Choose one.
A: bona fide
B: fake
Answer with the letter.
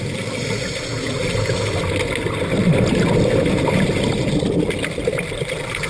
A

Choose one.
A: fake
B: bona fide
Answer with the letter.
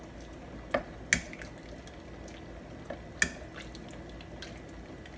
B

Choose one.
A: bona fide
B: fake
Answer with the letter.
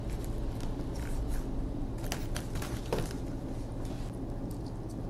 A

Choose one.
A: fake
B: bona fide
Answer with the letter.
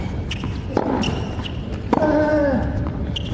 B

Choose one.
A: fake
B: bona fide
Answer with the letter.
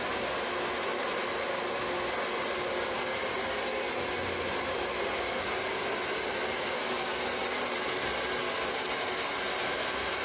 B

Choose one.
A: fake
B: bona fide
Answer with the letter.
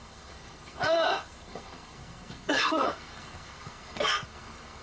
A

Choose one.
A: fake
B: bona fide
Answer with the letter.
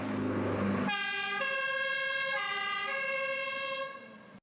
B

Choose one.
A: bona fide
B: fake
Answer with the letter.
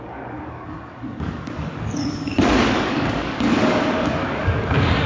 B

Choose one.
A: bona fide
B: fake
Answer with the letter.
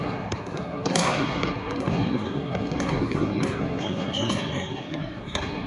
B